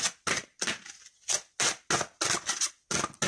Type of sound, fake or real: real